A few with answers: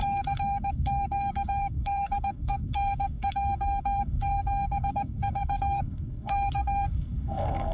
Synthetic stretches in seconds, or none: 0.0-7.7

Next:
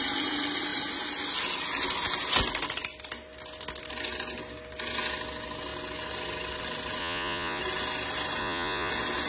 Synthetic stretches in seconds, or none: 7.0-7.6; 8.4-8.9